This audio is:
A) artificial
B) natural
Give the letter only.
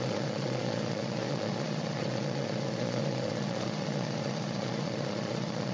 A